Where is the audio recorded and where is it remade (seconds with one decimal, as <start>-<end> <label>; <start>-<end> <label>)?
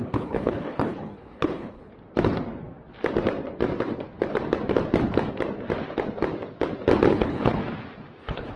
0.0-1.9 remade; 1.9-7.1 recorded; 7.1-7.6 remade; 7.6-8.2 recorded; 8.2-8.6 remade